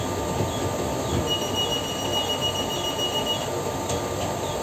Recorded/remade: recorded